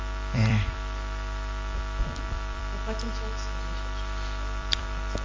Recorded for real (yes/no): no